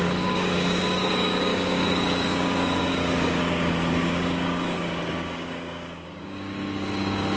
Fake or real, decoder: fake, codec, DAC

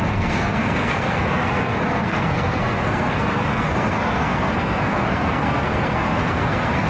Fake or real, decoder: fake, codec, SNAC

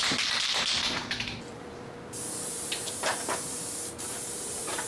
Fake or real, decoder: fake, vocoder, BigVGAN v2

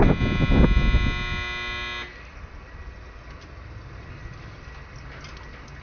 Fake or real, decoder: real